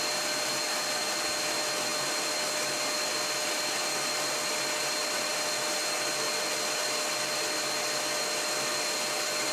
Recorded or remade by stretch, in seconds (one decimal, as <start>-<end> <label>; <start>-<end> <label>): 0.0-9.5 recorded